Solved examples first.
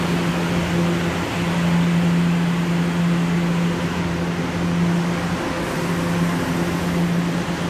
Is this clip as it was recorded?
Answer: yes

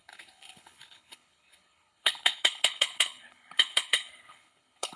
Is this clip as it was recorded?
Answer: no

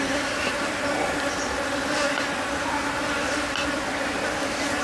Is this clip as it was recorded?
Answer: yes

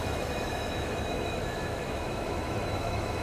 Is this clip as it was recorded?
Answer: no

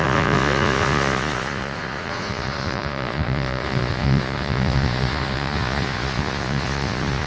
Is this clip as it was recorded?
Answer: no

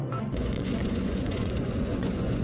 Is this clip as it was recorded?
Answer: no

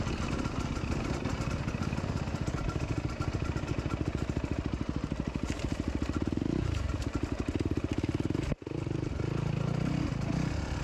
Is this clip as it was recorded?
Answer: yes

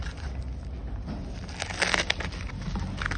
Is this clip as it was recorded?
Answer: yes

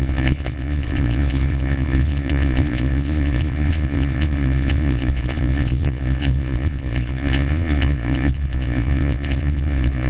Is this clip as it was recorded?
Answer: no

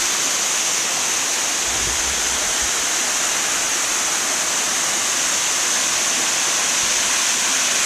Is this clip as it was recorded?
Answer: yes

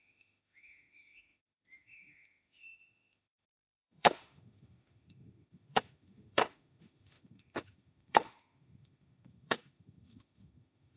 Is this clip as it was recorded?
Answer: no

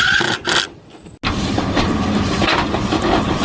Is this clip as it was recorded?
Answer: yes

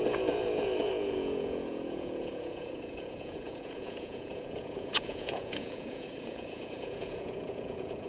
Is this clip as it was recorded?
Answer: no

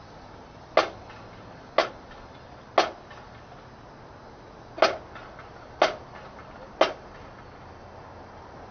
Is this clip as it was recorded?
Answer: yes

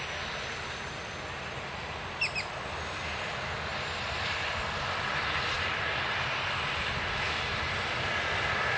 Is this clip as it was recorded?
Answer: yes